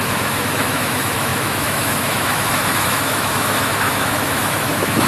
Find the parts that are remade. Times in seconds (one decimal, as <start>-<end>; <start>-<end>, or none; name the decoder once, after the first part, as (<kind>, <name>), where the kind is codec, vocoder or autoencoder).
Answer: 0.0-5.1 (autoencoder, DAC-VAE)